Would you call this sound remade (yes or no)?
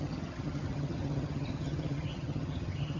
yes